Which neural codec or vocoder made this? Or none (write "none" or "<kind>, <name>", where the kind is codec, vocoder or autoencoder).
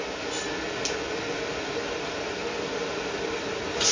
none